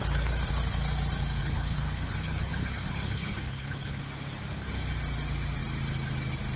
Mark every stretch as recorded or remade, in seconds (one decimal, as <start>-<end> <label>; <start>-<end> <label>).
0.0-1.4 recorded; 1.4-4.0 remade; 4.0-6.6 recorded